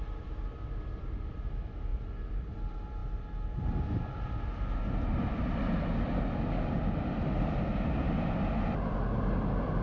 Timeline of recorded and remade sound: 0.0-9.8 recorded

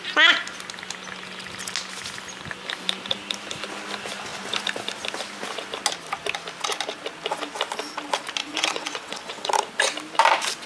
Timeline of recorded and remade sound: 0.0-8.4 recorded; 8.4-9.5 remade; 9.5-10.7 recorded

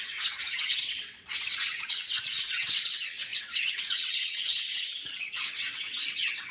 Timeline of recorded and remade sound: 0.0-6.5 remade

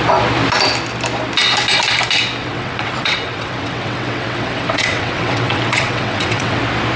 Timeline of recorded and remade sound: 0.0-2.4 recorded; 2.4-6.6 remade; 6.6-7.0 recorded